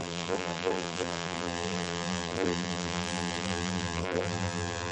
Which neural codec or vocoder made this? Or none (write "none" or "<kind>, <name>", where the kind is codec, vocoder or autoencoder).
vocoder, BigVGAN v2